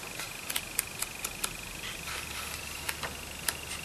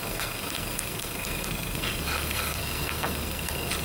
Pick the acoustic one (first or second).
first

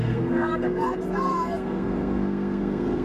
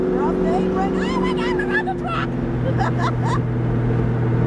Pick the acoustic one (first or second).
second